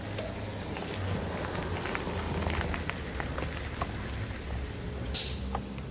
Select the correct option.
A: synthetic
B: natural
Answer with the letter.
B